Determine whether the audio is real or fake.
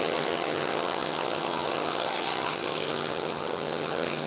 fake